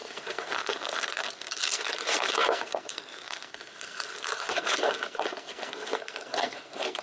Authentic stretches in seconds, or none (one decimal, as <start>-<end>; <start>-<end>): none